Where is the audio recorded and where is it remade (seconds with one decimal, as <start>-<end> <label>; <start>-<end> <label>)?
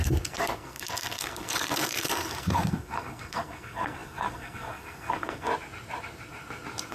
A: 0.0-5.5 remade; 5.5-6.9 recorded